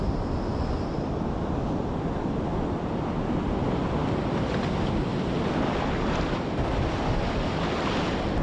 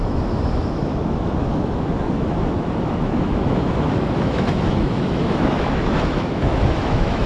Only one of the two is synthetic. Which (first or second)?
second